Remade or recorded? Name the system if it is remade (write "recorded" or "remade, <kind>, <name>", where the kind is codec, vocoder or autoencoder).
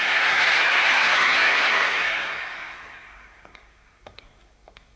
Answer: remade, codec, SNAC